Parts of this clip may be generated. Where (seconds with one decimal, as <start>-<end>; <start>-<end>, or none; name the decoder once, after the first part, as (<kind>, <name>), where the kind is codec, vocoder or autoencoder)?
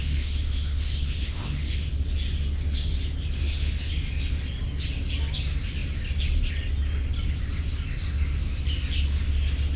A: 0.0-1.9 (autoencoder, DAC-VAE); 3.4-3.9